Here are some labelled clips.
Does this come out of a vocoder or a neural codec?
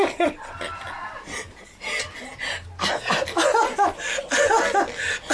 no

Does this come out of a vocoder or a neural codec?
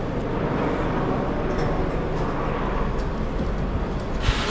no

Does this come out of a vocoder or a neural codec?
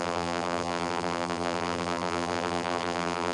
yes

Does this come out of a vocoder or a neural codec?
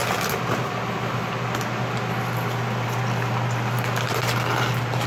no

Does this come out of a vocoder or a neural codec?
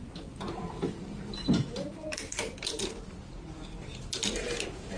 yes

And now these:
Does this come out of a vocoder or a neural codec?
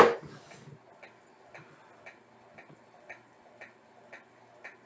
no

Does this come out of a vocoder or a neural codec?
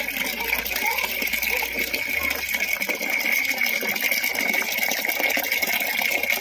no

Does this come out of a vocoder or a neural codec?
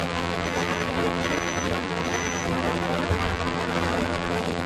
yes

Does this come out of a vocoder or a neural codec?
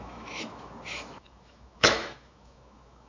yes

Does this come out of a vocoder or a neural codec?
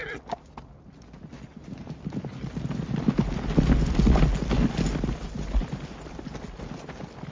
no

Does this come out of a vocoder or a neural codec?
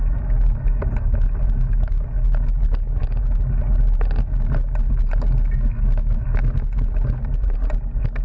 no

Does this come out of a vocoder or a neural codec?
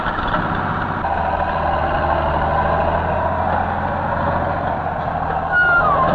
no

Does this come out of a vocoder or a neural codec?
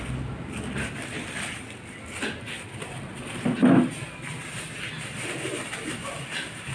no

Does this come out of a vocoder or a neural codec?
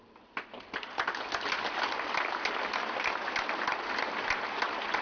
no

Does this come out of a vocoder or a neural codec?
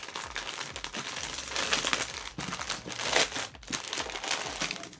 no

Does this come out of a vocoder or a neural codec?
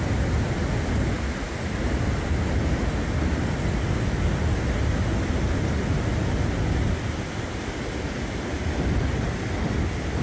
no